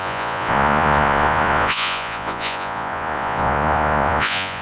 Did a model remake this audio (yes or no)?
yes